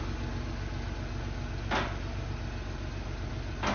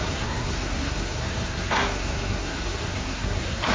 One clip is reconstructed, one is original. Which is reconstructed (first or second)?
second